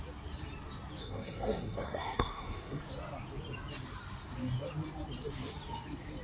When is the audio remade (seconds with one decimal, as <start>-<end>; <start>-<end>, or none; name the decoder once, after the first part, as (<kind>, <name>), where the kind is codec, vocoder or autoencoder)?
1.0-2.8 (codec, SNAC)